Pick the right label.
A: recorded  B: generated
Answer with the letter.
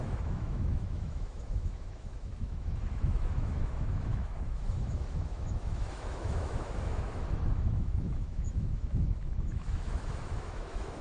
B